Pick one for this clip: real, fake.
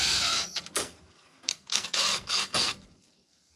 fake